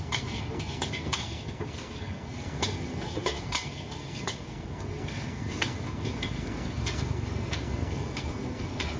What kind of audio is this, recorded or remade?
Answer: remade